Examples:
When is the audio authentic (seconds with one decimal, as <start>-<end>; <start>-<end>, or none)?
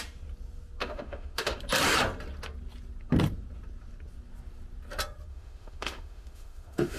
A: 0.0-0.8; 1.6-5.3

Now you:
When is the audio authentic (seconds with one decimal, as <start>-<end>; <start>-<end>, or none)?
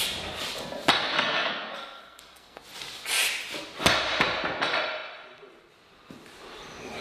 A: 0.0-1.0; 2.6-7.0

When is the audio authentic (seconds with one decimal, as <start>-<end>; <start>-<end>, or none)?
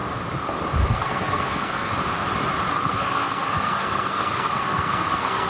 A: 0.0-0.9; 1.9-2.7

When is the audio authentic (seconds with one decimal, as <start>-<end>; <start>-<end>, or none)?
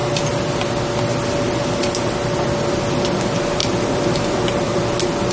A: 0.0-3.6; 4.8-5.3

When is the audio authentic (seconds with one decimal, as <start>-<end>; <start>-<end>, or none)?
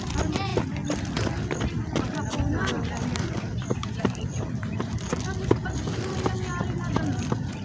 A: 0.0-3.8; 5.0-7.6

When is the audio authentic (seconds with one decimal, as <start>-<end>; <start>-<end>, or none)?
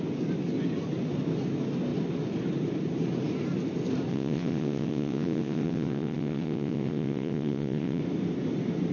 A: 0.0-4.1; 8.0-8.9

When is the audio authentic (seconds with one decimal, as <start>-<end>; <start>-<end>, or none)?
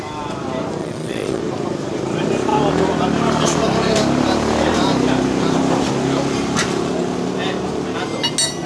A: 0.0-0.8; 1.4-8.7